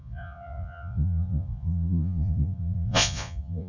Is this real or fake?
fake